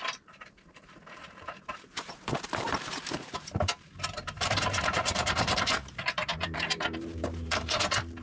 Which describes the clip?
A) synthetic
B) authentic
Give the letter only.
A